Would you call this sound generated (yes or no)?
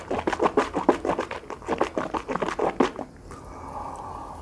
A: no